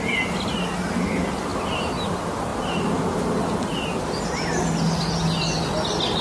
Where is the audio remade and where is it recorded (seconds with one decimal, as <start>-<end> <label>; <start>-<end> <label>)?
0.0-6.2 recorded